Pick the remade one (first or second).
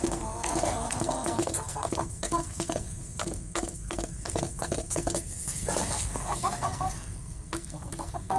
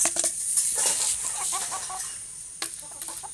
first